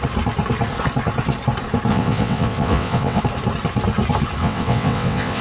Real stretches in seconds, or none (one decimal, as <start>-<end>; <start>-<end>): 0.0-1.9; 3.2-4.4